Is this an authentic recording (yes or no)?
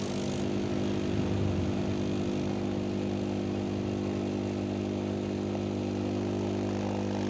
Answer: yes